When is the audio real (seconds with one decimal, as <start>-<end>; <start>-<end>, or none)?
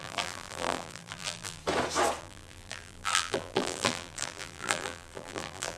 1.6-2.2